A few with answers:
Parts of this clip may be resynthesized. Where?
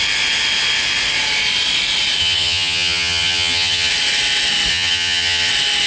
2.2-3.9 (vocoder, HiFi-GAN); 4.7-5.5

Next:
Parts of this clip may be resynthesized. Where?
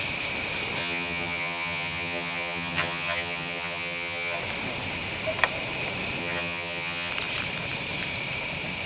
0.8-4.4 (vocoder, HiFi-GAN); 6.2-7.1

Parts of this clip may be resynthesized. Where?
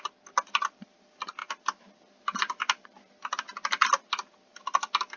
none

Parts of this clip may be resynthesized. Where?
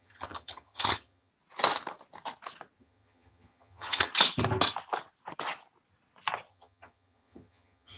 0.0-1.3 (vocoder, HiFi-GAN); 2.8-4.1; 6.5-8.0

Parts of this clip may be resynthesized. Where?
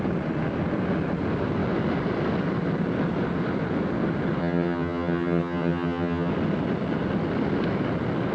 4.4-6.3 (vocoder, HiFi-GAN)